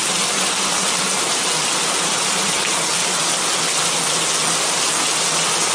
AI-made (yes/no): no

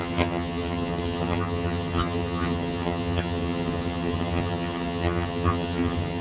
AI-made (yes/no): yes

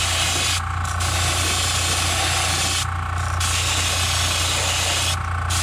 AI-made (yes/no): no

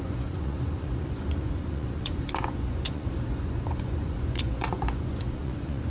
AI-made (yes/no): yes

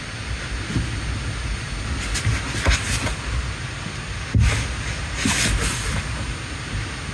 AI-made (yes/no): no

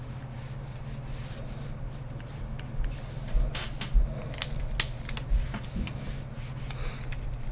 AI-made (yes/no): no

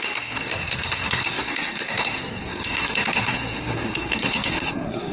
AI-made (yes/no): yes